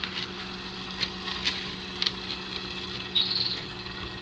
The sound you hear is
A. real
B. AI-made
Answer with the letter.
A